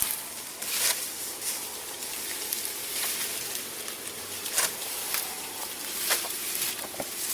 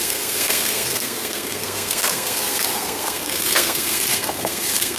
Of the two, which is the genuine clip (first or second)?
first